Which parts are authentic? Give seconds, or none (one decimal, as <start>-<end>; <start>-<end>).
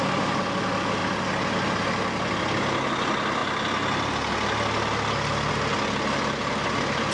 0.0-7.1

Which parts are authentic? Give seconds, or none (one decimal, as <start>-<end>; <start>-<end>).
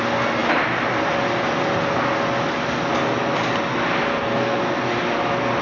0.0-4.1; 4.6-5.6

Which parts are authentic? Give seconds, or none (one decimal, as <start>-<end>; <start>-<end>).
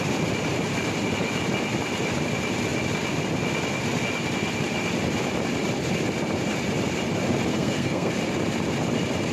0.0-7.5; 8.1-9.3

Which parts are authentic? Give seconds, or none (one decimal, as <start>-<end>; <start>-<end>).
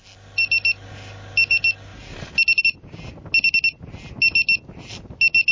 0.0-5.5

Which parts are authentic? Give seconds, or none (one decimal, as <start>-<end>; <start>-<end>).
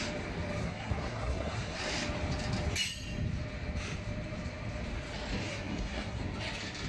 0.0-0.6; 1.8-5.5; 6.2-6.9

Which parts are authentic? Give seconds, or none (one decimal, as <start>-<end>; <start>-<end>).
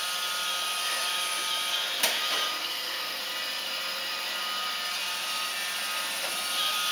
0.0-2.6; 3.2-6.9